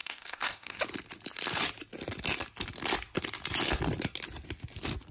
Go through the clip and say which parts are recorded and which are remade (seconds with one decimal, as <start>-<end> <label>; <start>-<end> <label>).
0.0-0.8 remade; 0.8-5.1 recorded